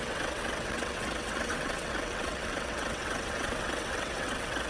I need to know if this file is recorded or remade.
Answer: remade